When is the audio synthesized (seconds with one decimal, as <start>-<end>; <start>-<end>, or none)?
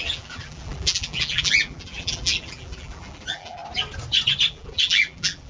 0.0-3.6; 4.5-5.5